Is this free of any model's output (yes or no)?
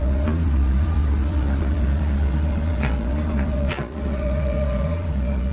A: no